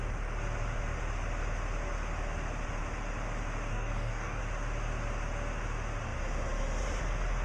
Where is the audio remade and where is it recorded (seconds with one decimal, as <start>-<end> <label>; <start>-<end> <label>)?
0.0-3.7 recorded; 3.7-4.4 remade; 4.4-7.4 recorded